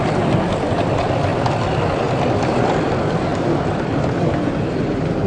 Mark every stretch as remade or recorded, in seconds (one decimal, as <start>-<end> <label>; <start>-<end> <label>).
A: 0.0-1.3 remade; 1.3-2.6 recorded; 2.6-5.3 remade